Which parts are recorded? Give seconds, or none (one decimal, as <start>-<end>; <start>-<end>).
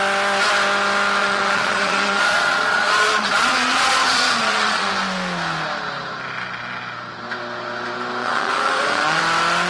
0.0-1.2; 4.9-8.2; 9.2-9.7